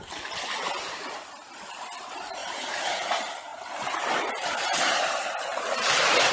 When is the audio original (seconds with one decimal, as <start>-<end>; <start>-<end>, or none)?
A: 0.0-2.4; 3.1-6.3